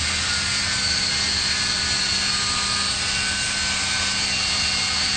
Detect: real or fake real